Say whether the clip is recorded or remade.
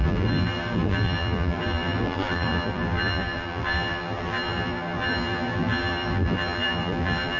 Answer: remade